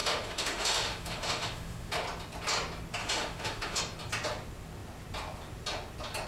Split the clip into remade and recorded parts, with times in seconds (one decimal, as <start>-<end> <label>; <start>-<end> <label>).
0.0-1.9 remade; 1.9-3.0 recorded; 3.0-3.8 remade; 3.8-6.3 recorded